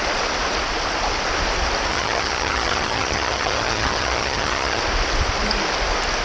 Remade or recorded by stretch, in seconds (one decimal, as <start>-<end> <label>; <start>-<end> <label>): 0.0-1.9 recorded; 1.9-4.8 remade; 4.8-6.2 recorded